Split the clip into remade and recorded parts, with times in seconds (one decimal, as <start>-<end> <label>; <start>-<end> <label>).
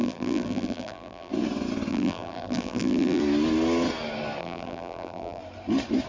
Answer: 0.0-1.3 remade; 1.3-1.9 recorded; 1.9-3.2 remade; 3.2-4.4 recorded; 4.4-5.4 remade; 5.4-6.1 recorded